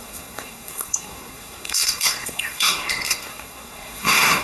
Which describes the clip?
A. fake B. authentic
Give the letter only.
A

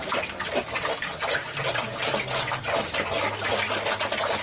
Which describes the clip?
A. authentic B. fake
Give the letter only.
A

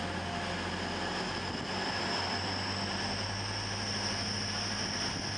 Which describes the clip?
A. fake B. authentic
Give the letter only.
B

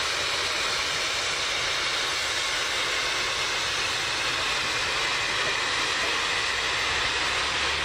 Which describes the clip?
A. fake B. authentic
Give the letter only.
B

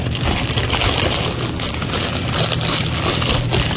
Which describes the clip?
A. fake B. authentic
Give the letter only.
B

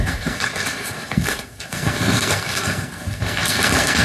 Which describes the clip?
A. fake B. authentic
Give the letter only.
A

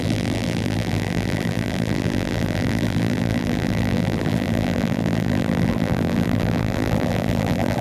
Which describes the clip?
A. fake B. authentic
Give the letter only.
A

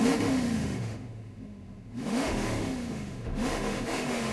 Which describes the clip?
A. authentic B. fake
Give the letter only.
B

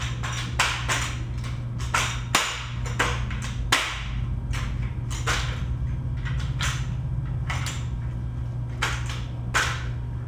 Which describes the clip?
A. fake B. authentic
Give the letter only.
B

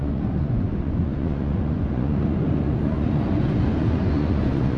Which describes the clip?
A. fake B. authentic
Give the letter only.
A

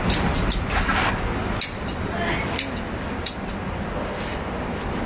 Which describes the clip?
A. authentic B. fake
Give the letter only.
A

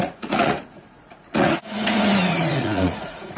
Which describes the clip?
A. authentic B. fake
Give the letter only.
B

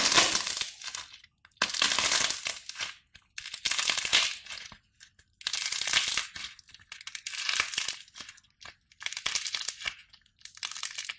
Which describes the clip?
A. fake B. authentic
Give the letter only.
B